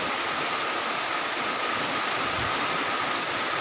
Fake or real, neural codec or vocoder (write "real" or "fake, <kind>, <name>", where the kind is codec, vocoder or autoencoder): real